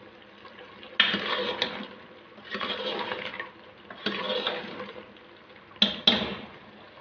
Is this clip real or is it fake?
real